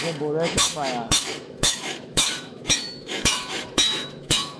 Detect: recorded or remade remade